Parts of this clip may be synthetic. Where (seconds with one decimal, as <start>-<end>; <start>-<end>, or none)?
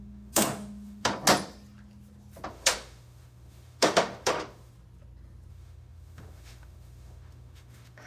0.0-1.1; 2.5-4.7; 5.5-8.1